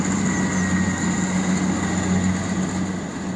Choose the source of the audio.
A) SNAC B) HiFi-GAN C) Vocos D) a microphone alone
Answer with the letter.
D